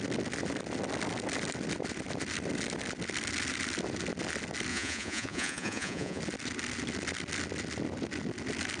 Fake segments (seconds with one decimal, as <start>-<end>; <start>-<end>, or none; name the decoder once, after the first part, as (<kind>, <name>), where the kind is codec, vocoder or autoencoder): 4.7-6.2 (vocoder, Vocos)